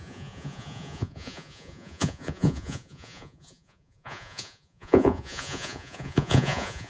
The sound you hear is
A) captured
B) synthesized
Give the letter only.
B